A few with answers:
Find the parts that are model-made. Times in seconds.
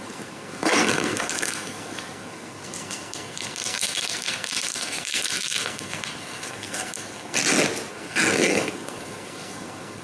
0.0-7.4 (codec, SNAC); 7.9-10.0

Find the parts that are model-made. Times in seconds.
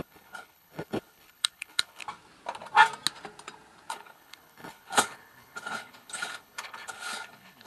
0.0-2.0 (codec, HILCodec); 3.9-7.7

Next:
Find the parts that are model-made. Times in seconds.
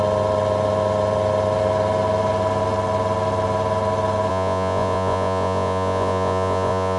4.3-7.0 (vocoder, Vocos)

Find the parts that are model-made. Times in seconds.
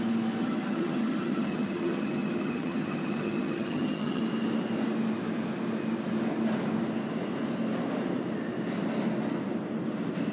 0.4-4.2 (vocoder, HiFi-GAN)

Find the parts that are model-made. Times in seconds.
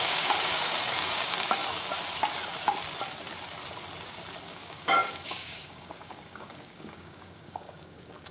0.0-1.6 (codec, DAC); 4.5-8.3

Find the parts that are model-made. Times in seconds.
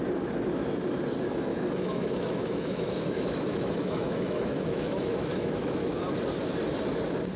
1.5-5.9 (autoencoder, DAC-VAE)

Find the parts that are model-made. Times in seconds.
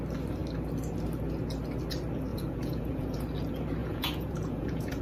2.3-3.2 (vocoder, Vocos); 3.8-5.0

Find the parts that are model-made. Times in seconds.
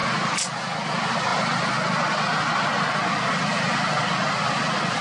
none